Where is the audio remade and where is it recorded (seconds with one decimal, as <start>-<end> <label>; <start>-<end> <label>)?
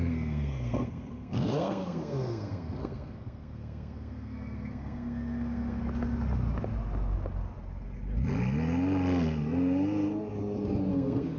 0.0-5.8 remade; 5.8-10.9 recorded; 10.9-11.4 remade